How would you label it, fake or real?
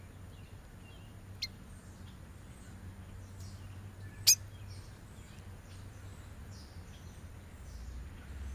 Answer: real